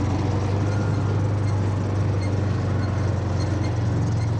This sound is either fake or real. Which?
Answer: real